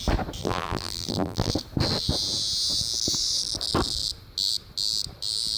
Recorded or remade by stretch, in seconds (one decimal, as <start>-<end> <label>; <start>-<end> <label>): 0.0-0.4 recorded; 0.4-1.5 remade; 1.5-5.6 recorded